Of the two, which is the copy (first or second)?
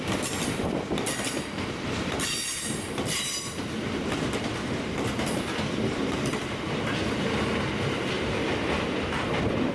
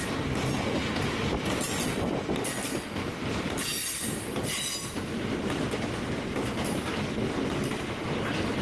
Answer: first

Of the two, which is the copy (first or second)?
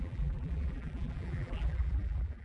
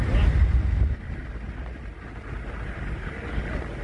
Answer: first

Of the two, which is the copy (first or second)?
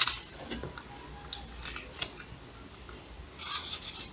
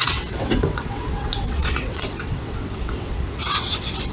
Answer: second